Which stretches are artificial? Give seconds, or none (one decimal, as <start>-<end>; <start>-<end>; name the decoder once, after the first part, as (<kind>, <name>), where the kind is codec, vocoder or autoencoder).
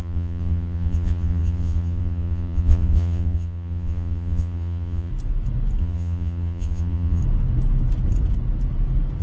0.0-5.1 (vocoder, Vocos); 5.8-7.2